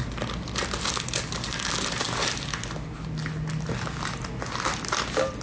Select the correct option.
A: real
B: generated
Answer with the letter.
A